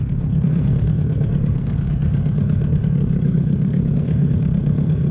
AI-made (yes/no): yes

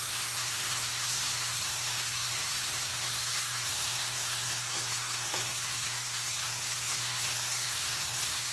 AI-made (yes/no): yes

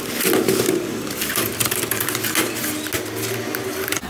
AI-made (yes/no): no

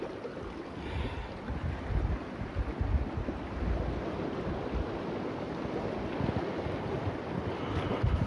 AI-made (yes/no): no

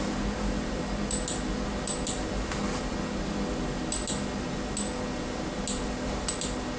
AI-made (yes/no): no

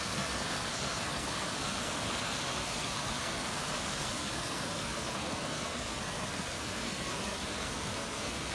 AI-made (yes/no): yes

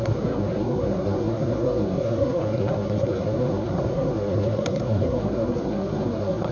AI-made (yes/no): yes